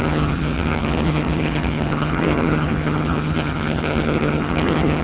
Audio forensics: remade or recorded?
remade